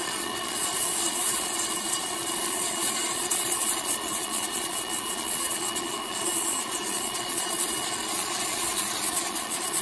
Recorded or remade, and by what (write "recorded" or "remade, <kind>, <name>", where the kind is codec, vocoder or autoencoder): remade, vocoder, Vocos